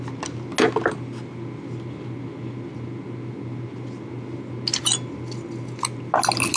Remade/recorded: recorded